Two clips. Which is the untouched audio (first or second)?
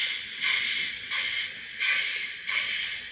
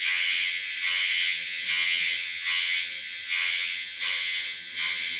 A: first